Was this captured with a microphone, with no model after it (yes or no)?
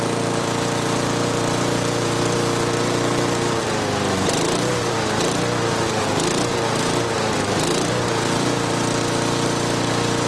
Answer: no